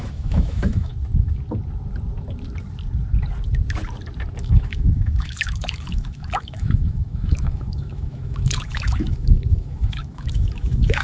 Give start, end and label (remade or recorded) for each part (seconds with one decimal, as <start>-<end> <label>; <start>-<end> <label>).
0.0-0.9 remade; 0.9-4.4 recorded; 4.4-11.0 remade